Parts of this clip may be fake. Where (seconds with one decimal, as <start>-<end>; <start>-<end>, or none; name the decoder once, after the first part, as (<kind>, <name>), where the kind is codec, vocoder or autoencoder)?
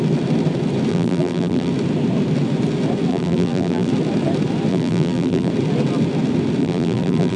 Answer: 0.9-1.7 (vocoder, BigVGAN v2); 3.1-3.9; 4.7-5.5; 6.6-7.4